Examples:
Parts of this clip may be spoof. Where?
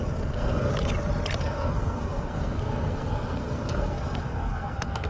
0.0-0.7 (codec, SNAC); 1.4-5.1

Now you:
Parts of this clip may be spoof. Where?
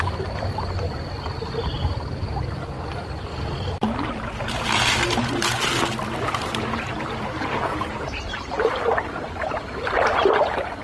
none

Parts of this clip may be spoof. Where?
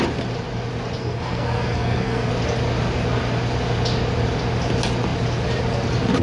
1.0-2.3 (codec, SNAC)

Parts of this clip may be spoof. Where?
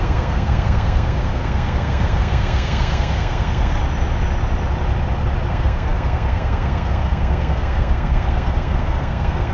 0.0-3.8 (codec, SNAC); 5.5-9.5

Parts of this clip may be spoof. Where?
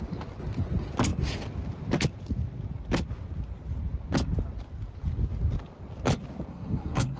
6.5-7.2 (codec, SNAC)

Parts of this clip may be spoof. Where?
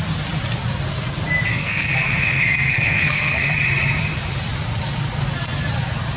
1.5-3.5 (codec, SNAC)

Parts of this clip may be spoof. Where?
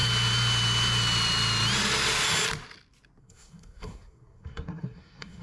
3.2-5.4 (codec, SNAC)